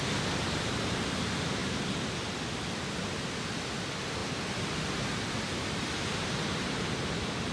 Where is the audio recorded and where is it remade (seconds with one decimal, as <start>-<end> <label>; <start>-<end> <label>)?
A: 0.0-7.5 recorded